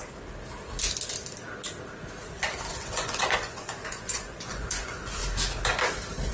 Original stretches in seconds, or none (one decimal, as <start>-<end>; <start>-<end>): 0.0-2.7; 5.2-6.3